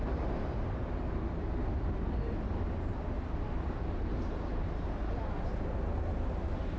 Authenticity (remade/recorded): recorded